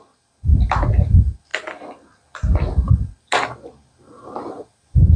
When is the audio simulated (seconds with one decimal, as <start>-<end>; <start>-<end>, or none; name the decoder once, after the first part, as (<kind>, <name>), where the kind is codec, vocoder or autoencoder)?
none